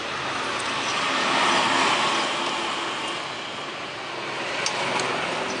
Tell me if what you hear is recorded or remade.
recorded